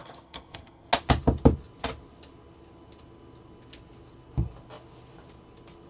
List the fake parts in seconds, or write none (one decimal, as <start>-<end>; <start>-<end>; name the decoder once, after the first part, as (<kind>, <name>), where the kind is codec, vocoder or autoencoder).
0.0-0.9 (codec, SNAC)